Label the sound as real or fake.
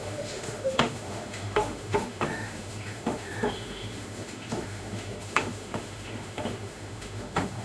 fake